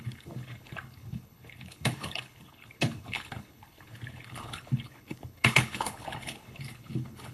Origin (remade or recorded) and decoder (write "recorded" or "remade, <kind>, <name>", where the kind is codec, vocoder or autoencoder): remade, codec, HILCodec